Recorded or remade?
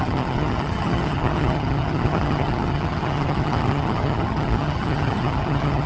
remade